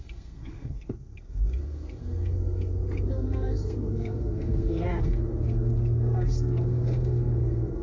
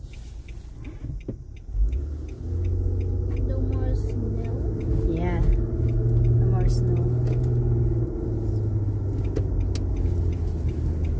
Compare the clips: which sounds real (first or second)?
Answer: second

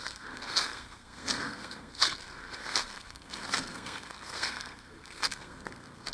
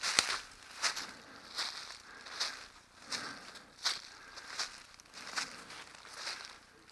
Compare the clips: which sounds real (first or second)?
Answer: second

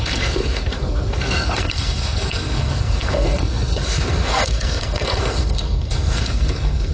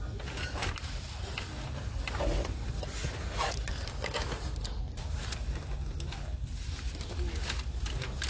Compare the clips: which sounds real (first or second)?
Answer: second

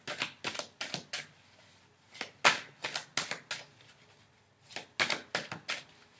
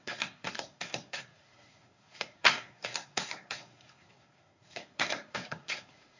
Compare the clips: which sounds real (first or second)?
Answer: first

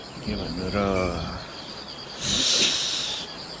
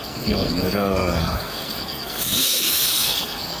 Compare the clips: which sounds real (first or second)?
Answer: first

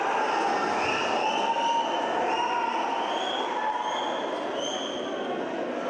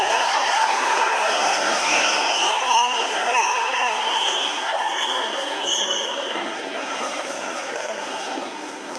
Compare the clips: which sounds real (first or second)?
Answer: first